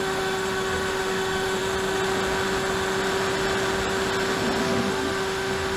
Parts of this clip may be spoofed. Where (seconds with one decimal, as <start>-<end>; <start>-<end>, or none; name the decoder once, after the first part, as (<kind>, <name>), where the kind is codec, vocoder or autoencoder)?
0.0-1.6 (autoencoder, DAC-VAE); 4.6-5.8